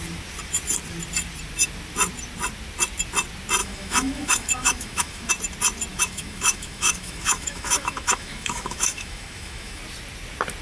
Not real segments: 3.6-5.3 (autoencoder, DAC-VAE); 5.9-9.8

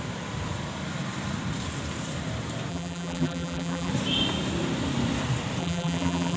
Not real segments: 2.7-3.9 (vocoder, BigVGAN v2); 5.6-6.4